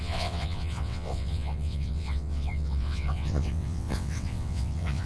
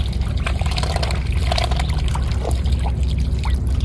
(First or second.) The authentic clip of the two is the second